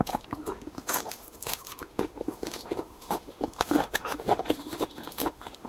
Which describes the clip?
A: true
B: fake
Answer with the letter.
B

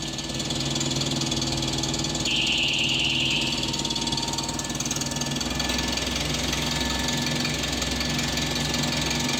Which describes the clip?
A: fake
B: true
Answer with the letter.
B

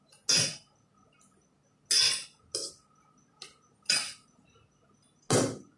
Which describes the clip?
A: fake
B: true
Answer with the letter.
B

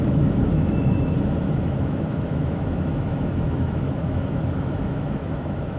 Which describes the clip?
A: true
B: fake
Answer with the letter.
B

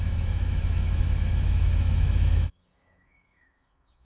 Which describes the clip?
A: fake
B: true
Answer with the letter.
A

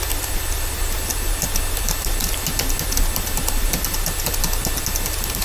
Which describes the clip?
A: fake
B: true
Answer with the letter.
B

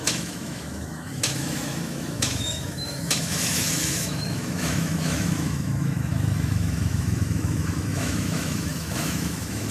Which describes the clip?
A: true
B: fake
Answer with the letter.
B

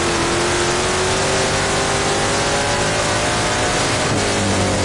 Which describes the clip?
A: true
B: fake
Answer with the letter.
A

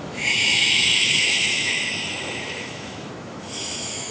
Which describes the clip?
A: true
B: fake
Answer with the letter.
B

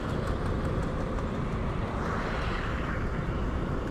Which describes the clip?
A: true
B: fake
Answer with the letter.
A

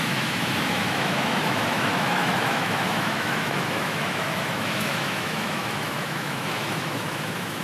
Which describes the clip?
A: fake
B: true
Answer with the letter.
A